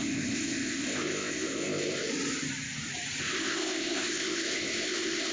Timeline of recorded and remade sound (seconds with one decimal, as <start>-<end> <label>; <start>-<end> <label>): 0.0-2.1 remade; 2.1-3.2 recorded; 3.2-5.3 remade

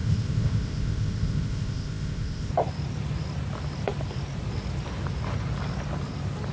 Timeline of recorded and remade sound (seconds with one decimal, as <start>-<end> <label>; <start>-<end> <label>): 0.0-2.5 remade; 2.5-6.5 recorded

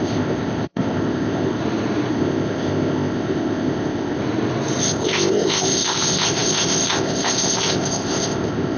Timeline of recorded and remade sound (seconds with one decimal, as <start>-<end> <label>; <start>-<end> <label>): 0.0-1.6 remade; 1.6-2.1 recorded; 2.1-4.2 remade; 4.2-4.8 recorded; 4.8-8.8 remade